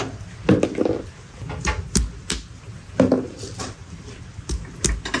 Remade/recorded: recorded